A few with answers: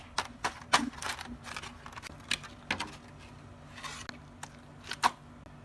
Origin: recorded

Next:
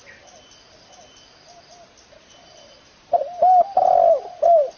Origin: recorded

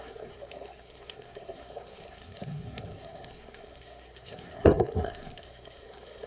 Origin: remade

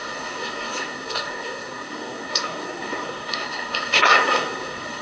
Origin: remade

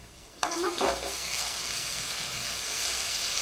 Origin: remade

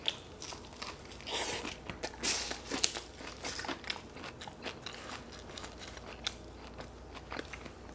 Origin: recorded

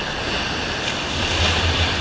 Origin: recorded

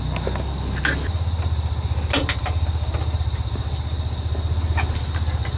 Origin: recorded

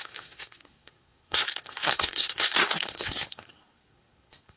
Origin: remade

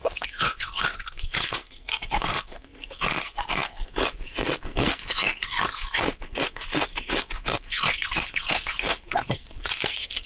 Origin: remade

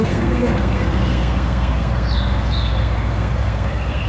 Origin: remade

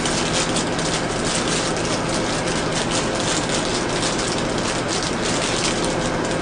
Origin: recorded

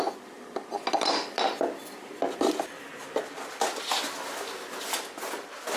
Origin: recorded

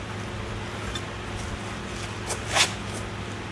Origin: recorded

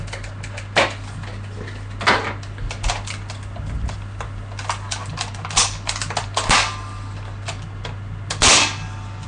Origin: recorded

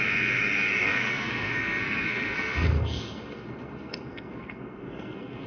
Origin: remade